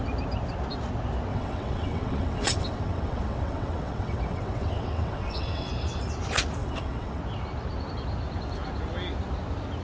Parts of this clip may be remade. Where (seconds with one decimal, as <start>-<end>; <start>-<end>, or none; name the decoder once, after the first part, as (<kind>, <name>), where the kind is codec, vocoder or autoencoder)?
1.3-5.7 (vocoder, WaveNeXt); 6.6-7.2